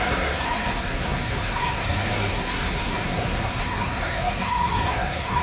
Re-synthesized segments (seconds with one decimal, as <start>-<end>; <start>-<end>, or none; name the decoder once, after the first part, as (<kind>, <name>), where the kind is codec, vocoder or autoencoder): 0.0-5.4 (codec, SNAC)